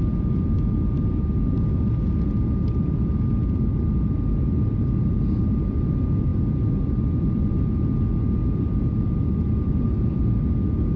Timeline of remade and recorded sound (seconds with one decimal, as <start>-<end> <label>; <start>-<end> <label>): 0.0-6.3 recorded; 6.3-7.7 remade; 7.7-8.4 recorded; 8.4-9.7 remade; 9.7-11.0 recorded